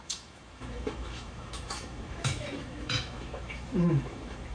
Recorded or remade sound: remade